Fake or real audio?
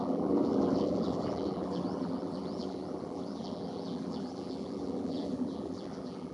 fake